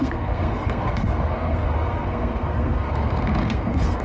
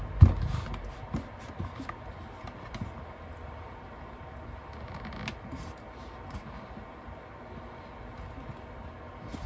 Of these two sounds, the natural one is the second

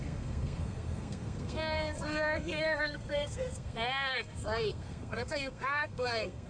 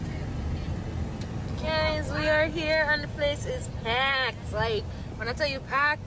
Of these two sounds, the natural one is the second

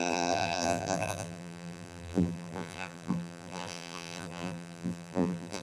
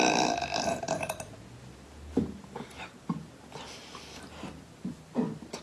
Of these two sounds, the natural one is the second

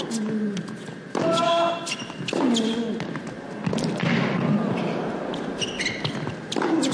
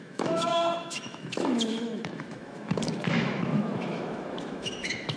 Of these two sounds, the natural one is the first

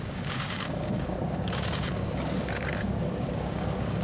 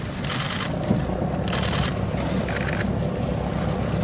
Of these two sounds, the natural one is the second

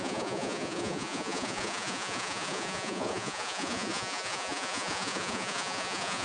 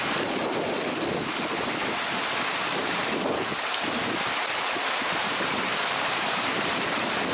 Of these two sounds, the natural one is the second